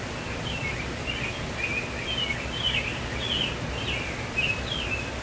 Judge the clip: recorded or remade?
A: recorded